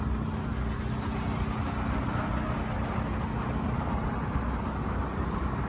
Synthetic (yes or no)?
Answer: no